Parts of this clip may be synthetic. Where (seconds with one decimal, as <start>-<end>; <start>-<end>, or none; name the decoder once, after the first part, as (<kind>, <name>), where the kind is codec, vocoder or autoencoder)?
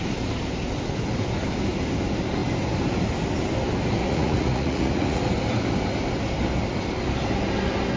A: 4.0-5.2 (vocoder, Vocos)